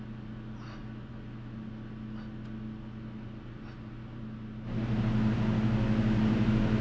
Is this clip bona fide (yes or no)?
yes